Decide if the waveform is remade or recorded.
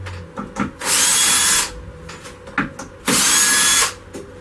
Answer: recorded